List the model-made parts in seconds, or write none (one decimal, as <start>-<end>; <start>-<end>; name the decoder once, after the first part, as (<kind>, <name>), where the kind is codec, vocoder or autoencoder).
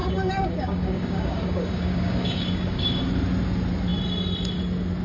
0.0-3.0 (codec, DAC)